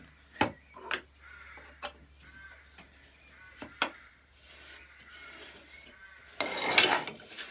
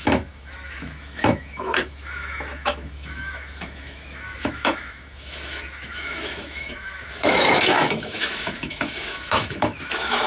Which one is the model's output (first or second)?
second